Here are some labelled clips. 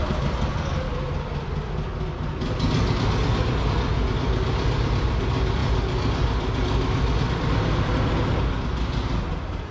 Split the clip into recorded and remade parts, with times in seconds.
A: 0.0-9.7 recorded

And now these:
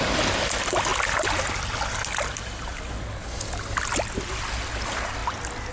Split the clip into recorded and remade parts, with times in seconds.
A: 0.0-0.9 remade; 0.9-4.3 recorded; 4.3-5.2 remade; 5.2-5.7 recorded

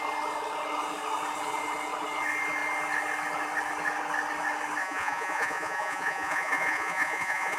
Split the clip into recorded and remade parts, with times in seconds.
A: 0.0-4.8 recorded; 4.8-7.6 remade

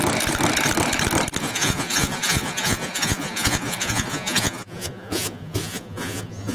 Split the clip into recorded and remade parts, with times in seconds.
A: 0.0-1.4 recorded; 1.4-6.5 remade

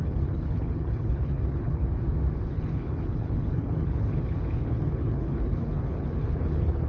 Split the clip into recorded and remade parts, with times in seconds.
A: 0.0-1.8 remade; 1.8-2.4 recorded; 2.4-6.9 remade

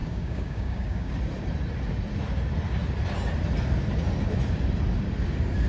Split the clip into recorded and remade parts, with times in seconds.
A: 0.0-1.1 remade; 1.1-5.7 recorded

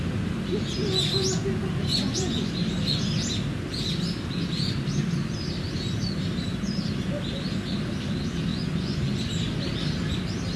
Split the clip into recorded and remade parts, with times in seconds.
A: 0.0-1.9 recorded; 1.9-2.5 remade; 2.5-8.5 recorded; 8.5-9.2 remade; 9.2-10.6 recorded